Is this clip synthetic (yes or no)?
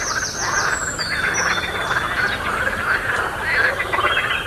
no